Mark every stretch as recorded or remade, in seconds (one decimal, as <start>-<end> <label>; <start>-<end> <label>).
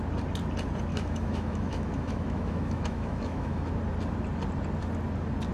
0.0-0.9 recorded; 0.9-3.7 remade; 3.7-5.5 recorded